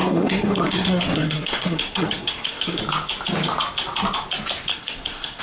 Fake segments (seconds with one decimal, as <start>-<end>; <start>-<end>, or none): 0.0-2.8; 4.7-5.4